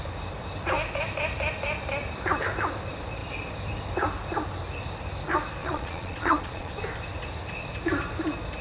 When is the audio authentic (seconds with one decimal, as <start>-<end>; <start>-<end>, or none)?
0.0-5.6; 6.7-8.6